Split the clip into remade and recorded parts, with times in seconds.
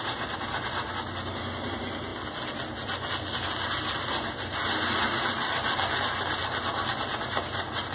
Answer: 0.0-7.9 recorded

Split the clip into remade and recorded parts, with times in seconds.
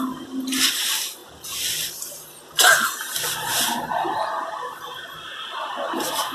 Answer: 0.0-6.3 recorded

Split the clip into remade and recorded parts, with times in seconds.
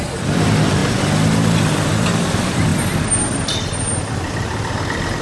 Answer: 0.0-0.8 remade; 0.8-1.6 recorded; 1.6-2.7 remade; 2.7-4.3 recorded; 4.3-5.2 remade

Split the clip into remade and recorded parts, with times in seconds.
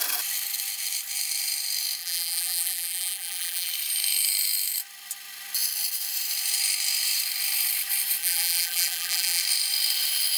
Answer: 0.0-2.0 recorded; 2.0-3.7 remade; 3.7-8.2 recorded; 8.2-9.4 remade; 9.4-10.4 recorded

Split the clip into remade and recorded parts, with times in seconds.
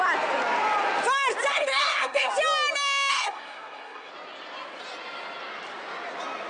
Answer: 0.0-1.5 recorded; 1.5-2.3 remade; 2.3-3.1 recorded; 3.1-4.1 remade; 4.1-6.5 recorded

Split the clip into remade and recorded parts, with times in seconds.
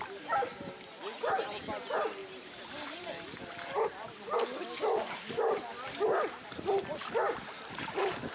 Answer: 0.0-8.3 recorded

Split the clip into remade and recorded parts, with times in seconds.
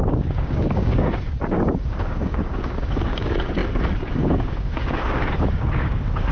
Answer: 0.0-6.3 remade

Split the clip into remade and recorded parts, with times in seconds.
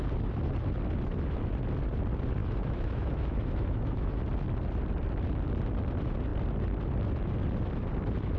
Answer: 0.0-2.4 recorded; 2.4-4.2 remade; 4.2-8.4 recorded